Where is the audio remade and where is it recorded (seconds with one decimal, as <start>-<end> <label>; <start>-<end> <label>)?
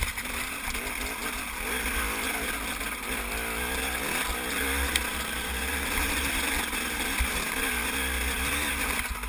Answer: 0.0-5.1 recorded; 5.1-6.3 remade; 6.3-9.3 recorded